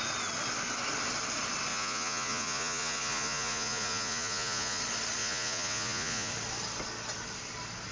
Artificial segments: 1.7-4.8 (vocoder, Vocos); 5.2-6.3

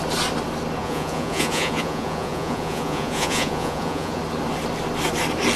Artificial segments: 0.8-4.2 (vocoder, Vocos)

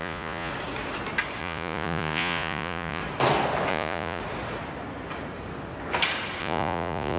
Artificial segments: 0.0-0.5 (vocoder, Vocos); 1.4-3.0; 3.7-4.2; 6.4-7.2

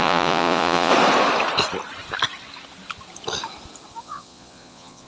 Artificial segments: 0.0-0.9 (vocoder, Vocos); 4.0-5.1

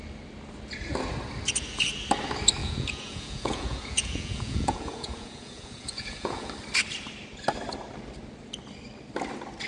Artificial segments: 2.6-6.5 (vocoder, Vocos)

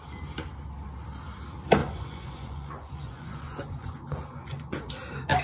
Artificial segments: 1.8-4.9 (vocoder, Vocos)

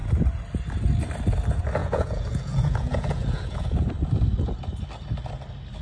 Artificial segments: 1.8-3.9 (vocoder, Vocos)

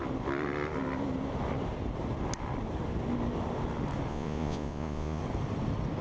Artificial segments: 4.1-5.2 (vocoder, Vocos)